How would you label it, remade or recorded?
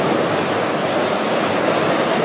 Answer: recorded